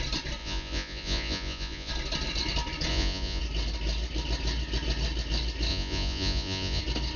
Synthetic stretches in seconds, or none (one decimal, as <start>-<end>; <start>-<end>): 0.4-1.9; 2.9-3.4; 5.7-6.8